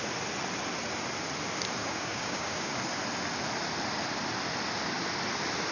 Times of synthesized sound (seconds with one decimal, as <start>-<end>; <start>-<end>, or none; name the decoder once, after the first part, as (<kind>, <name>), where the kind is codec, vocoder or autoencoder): 1.8-2.7 (codec, DAC)

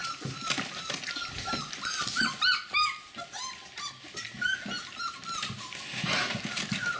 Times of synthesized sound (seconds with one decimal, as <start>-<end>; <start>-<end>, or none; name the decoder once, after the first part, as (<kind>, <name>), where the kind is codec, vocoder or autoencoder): none

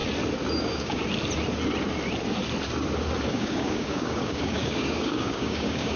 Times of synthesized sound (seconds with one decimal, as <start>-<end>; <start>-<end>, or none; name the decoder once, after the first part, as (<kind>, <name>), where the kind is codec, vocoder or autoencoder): 0.6-1.0 (codec, DAC); 3.3-6.0

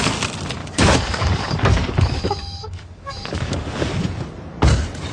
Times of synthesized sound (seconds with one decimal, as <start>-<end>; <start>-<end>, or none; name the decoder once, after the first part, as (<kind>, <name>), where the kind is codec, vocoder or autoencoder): 0.6-3.7 (codec, DAC)

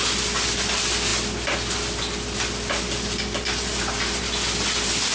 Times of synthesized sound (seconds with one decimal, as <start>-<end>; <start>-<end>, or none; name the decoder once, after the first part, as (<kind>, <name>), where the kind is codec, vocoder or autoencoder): none

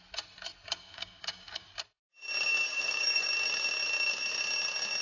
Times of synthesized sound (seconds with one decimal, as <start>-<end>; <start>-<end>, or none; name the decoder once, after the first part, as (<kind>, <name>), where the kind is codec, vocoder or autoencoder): 0.8-1.8 (codec, DAC); 2.7-3.3

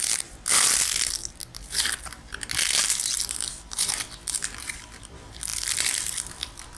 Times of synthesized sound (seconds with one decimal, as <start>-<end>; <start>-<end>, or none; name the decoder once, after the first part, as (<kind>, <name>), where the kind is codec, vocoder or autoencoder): none